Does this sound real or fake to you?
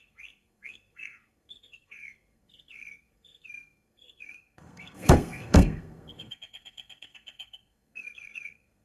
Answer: fake